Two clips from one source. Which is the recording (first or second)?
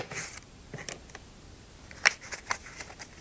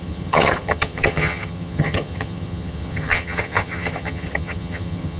first